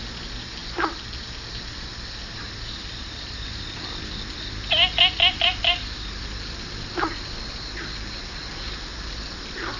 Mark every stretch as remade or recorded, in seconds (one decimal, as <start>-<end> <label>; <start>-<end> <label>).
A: 0.0-9.8 recorded